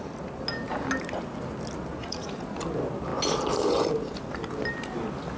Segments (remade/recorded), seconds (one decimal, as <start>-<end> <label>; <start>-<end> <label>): 0.0-2.0 recorded; 2.0-2.6 remade; 2.6-5.4 recorded